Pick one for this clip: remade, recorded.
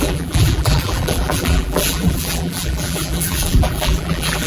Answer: remade